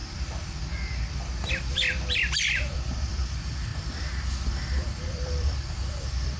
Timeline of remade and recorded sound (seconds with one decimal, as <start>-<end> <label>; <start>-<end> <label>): 0.0-1.5 recorded; 1.5-3.7 remade; 3.7-4.6 recorded; 4.6-6.4 remade